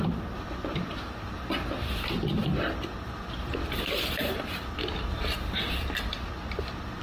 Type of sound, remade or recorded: recorded